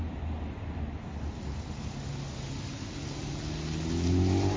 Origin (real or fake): real